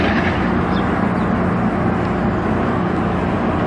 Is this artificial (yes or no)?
no